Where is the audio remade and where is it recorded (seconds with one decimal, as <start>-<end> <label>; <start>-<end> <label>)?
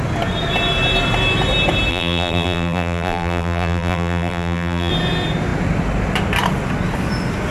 0.0-1.9 recorded; 1.9-4.9 remade; 4.9-7.5 recorded